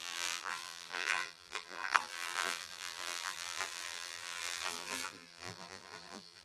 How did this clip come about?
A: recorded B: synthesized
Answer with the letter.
B